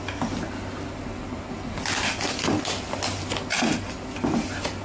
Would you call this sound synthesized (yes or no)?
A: no